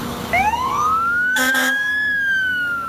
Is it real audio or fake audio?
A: fake